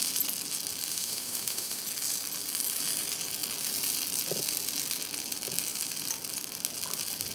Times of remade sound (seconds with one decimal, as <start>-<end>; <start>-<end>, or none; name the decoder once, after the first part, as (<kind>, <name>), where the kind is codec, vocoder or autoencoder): 0.9-1.8 (autoencoder, DAC-VAE)